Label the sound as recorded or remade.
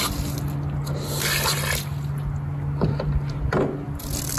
recorded